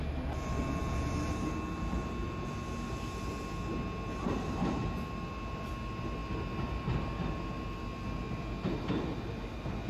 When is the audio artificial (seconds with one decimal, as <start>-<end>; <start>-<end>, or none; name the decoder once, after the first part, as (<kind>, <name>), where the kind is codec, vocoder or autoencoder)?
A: none